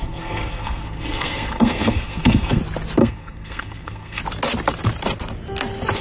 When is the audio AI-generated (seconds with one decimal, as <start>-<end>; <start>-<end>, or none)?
0.0-2.6; 3.0-4.2